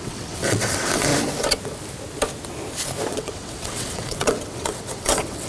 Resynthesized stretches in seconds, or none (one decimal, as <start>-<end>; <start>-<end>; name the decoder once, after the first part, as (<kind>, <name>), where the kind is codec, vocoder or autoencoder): 0.0-1.1 (vocoder, WaveNeXt); 3.1-5.5